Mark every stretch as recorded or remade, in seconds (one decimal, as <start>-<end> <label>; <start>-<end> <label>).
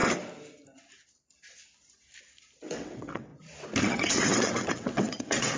0.0-2.6 recorded; 2.6-3.3 remade; 3.3-3.8 recorded; 3.8-5.6 remade